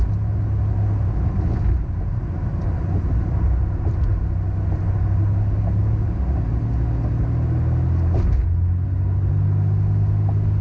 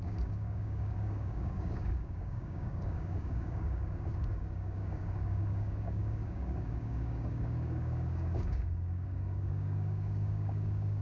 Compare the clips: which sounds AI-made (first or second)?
second